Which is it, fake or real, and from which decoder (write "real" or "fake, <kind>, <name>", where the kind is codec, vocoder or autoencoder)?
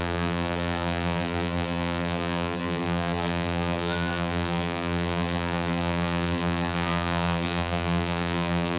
fake, vocoder, BigVGAN v2